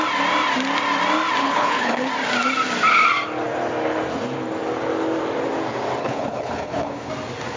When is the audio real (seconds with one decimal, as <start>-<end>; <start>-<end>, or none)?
0.0-1.4; 2.1-6.0; 7.1-7.6